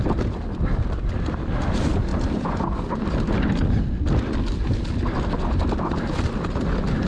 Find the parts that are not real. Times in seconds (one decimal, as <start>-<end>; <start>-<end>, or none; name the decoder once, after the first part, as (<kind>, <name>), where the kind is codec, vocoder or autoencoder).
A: 0.0-2.1 (vocoder, BigVGAN v2); 6.1-7.1